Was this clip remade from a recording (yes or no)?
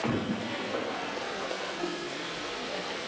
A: yes